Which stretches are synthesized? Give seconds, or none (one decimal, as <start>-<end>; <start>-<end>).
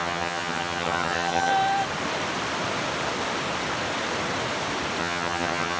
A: 0.0-1.5; 5.0-5.8